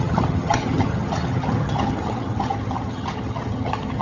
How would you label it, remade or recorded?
remade